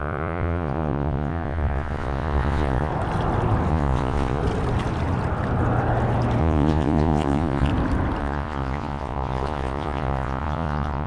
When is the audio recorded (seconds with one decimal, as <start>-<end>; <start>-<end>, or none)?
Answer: 2.9-3.7; 4.4-6.4; 7.7-8.2